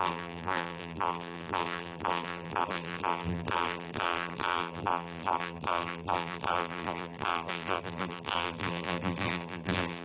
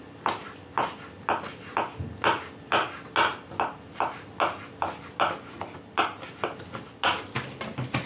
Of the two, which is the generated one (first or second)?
first